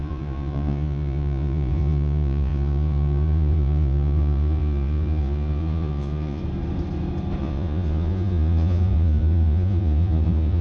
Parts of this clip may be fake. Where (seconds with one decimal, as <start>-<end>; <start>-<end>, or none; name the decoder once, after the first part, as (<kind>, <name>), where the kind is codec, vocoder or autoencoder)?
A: 0.0-6.4 (vocoder, Vocos); 7.4-10.6